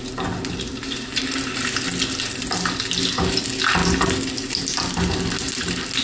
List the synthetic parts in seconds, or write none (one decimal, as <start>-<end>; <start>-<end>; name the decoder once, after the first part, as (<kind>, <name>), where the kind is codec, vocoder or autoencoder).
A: none